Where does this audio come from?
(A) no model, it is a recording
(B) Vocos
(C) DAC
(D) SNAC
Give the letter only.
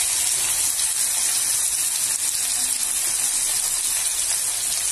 A